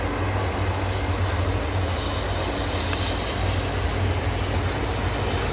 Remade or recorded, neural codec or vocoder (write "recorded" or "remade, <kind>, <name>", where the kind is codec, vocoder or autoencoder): recorded